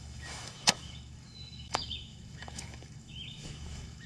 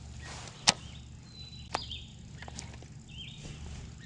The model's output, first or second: first